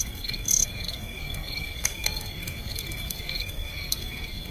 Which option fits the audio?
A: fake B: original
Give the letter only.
A